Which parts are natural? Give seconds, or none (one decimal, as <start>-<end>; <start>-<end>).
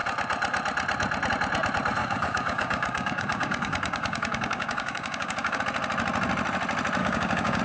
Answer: 0.0-2.0; 5.6-7.0